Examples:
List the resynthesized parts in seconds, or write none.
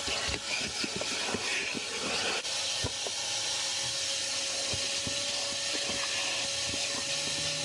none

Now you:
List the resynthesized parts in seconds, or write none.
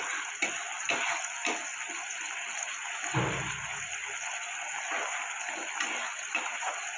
none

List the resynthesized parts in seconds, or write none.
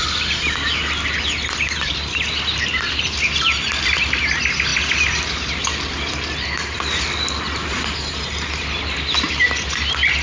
none